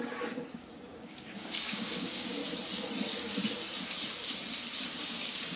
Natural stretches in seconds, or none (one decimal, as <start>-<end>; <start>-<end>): 2.4-5.0